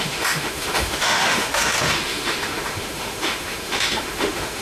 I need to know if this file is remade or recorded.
remade